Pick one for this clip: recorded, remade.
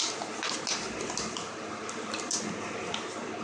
recorded